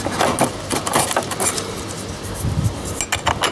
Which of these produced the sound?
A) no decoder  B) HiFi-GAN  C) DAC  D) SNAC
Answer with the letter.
A